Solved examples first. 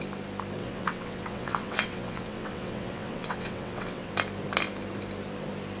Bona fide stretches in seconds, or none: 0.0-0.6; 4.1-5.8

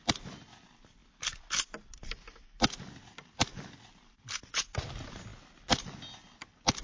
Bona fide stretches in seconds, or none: 0.0-6.8

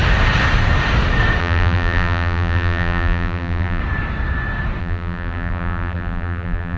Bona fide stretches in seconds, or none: 0.0-1.4; 3.8-4.8